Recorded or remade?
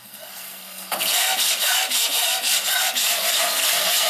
remade